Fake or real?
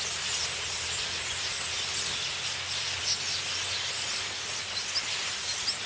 real